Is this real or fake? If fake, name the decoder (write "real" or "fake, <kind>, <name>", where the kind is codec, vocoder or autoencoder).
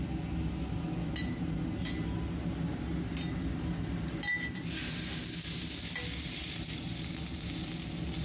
real